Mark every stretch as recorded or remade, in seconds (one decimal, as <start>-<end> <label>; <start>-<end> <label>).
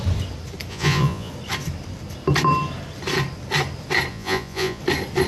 0.0-0.7 recorded; 0.7-1.3 remade; 1.3-4.1 recorded; 4.1-4.8 remade; 4.8-5.3 recorded